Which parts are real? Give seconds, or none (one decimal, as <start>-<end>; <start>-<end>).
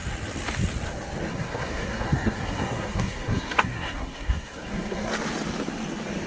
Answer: 0.0-1.3; 5.1-6.3